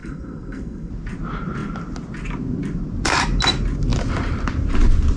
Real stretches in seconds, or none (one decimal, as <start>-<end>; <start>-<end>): 0.9-5.2